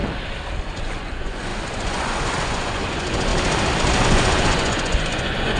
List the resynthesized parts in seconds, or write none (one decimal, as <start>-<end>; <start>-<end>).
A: 0.6-3.3; 4.0-5.6